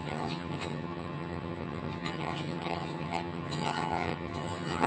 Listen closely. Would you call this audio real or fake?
fake